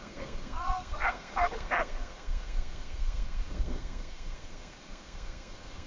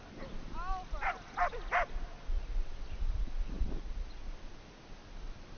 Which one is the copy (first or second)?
first